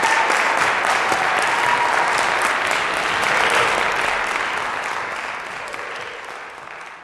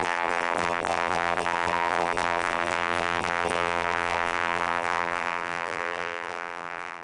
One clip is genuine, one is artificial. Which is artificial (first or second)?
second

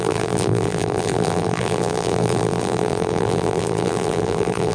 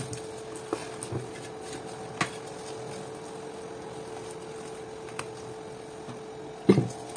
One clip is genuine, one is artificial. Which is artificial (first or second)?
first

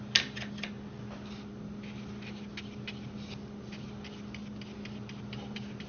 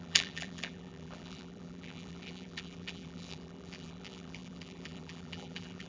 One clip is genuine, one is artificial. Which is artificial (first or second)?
second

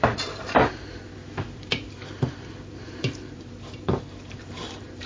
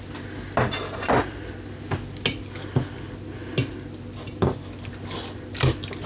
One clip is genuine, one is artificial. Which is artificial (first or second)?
first